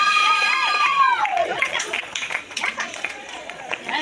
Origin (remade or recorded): remade